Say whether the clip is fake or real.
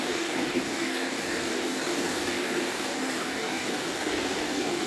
fake